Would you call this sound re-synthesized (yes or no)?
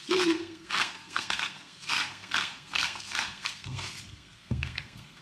yes